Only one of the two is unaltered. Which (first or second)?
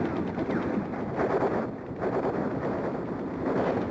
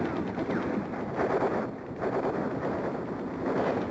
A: second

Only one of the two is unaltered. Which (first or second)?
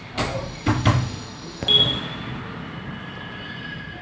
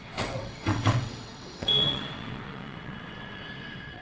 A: first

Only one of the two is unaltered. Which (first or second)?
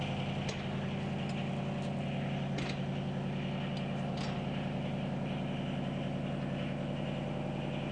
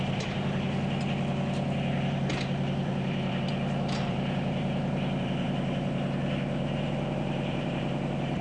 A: first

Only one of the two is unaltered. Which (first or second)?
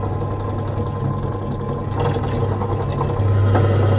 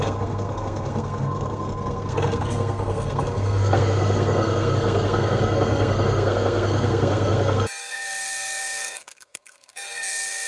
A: first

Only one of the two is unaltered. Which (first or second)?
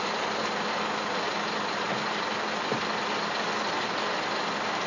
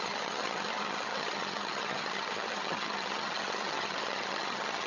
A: first